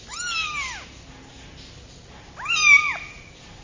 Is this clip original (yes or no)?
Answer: yes